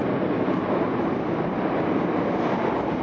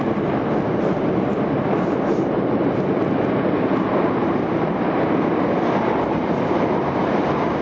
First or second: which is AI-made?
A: second